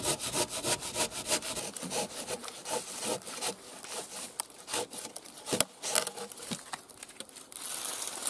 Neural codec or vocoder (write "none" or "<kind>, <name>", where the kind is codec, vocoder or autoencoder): none